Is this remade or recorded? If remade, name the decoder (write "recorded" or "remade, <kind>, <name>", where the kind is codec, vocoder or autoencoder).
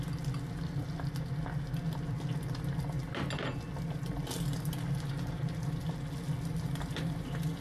recorded